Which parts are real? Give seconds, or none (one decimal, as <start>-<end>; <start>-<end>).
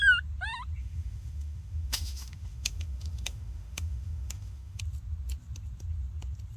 0.0-0.8; 4.8-6.6